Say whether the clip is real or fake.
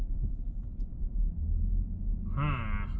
real